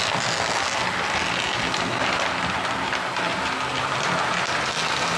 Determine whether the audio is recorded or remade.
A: recorded